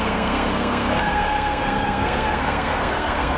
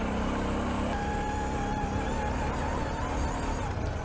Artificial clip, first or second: first